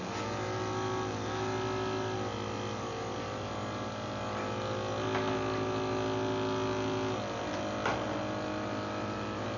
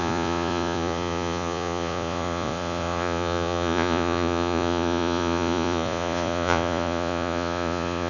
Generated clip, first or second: second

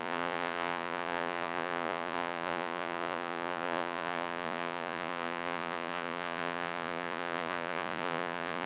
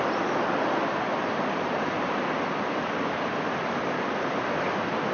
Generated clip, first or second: first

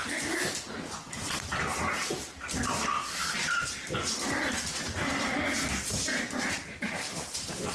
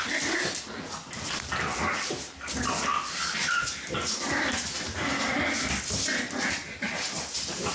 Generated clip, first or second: first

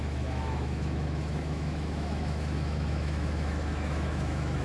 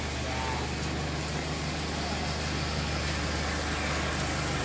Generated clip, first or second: first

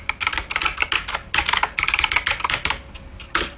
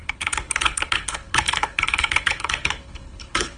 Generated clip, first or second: second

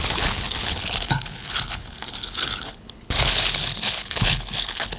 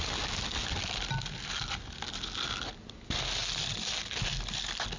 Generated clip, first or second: first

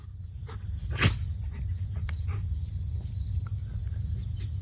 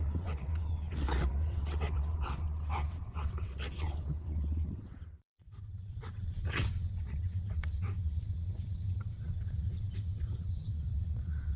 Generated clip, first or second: second